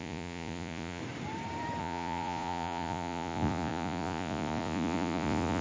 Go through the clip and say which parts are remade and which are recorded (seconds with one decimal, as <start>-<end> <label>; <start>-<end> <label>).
0.0-1.0 remade; 1.0-1.8 recorded; 1.8-5.6 remade